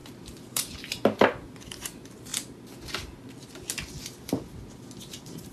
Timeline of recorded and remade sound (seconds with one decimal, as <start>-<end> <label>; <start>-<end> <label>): 0.0-0.5 recorded; 0.5-2.3 remade; 2.3-5.1 recorded; 5.1-5.5 remade

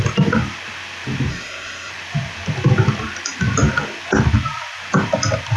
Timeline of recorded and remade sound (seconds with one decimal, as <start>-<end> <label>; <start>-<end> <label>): 0.0-1.3 recorded; 1.3-1.9 remade; 1.9-5.6 recorded

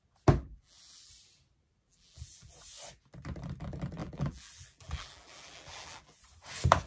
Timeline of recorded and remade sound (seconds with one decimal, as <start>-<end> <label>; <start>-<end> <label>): 0.0-0.4 recorded; 0.4-1.1 remade; 1.1-1.9 recorded; 1.9-2.6 remade; 2.6-4.0 recorded; 4.0-6.2 remade; 6.2-6.9 recorded

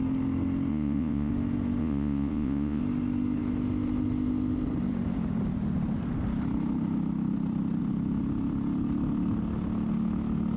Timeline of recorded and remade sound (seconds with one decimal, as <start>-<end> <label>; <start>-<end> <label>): 0.0-0.7 recorded; 0.7-1.3 remade; 1.3-1.8 recorded; 1.8-2.8 remade; 2.8-10.6 recorded

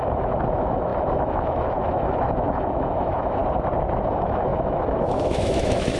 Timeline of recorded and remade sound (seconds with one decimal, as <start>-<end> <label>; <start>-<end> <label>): 0.0-3.4 remade; 3.4-4.1 recorded; 4.1-6.0 remade

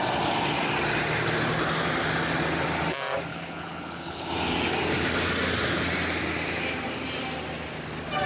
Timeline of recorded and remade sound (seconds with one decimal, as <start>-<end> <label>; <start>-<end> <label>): 0.0-3.3 recorded; 3.3-4.3 remade; 4.3-8.3 recorded